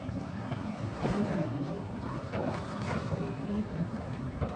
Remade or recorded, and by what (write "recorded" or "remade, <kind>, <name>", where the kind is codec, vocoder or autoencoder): remade, codec, SNAC